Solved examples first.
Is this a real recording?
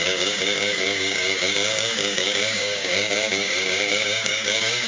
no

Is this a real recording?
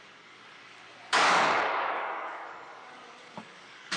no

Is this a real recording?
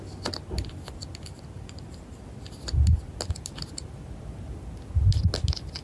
yes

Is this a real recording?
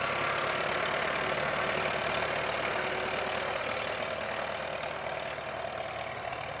yes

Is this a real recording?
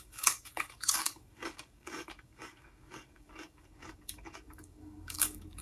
no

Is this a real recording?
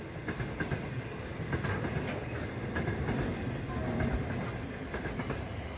yes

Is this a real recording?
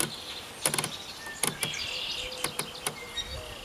yes